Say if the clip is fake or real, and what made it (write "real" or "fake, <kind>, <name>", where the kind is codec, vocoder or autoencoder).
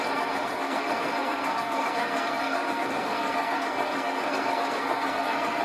fake, codec, SNAC